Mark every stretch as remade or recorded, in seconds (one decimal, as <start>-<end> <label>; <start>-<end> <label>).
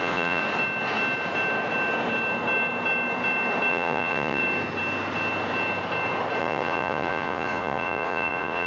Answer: 0.0-0.4 remade; 0.4-3.7 recorded; 3.7-4.4 remade; 4.4-6.4 recorded; 6.4-8.7 remade